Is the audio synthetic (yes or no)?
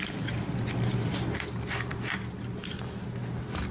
no